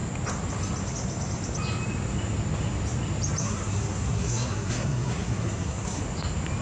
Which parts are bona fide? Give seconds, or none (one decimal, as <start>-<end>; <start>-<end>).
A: 0.0-3.4; 6.0-6.6